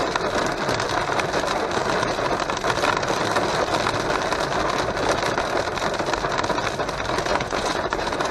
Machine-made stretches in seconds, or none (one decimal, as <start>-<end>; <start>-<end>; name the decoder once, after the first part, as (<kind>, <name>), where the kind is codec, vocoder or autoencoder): 7.3-8.3 (vocoder, Vocos)